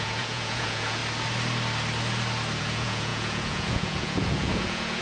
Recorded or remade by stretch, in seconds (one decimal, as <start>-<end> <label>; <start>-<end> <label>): 0.0-1.0 remade; 1.0-2.6 recorded; 2.6-5.0 remade